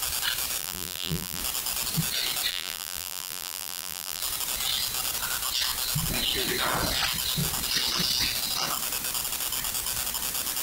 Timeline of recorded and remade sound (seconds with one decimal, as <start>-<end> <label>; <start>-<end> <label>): 0.0-0.6 recorded; 0.6-1.4 remade; 1.4-2.5 recorded; 2.5-4.2 remade; 4.2-10.6 recorded